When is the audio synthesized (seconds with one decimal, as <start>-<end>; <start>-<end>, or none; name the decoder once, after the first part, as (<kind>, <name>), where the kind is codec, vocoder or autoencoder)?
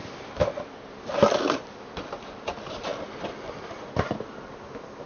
0.0-2.9 (vocoder, BigVGAN v2)